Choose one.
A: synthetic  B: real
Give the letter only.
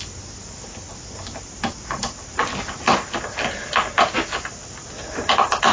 B